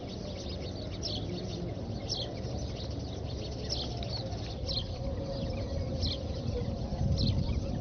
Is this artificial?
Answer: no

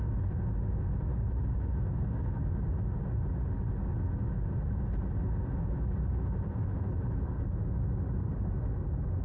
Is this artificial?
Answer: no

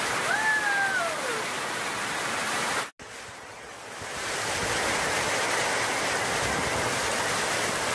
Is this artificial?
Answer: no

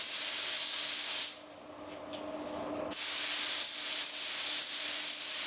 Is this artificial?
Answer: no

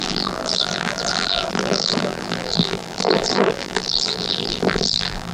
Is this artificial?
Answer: yes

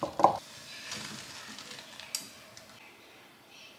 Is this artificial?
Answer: no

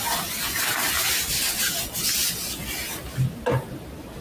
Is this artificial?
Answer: no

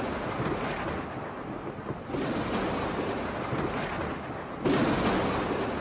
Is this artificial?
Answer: no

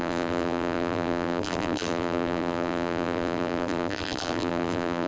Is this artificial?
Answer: yes